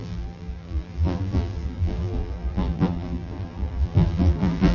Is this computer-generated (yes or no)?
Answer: yes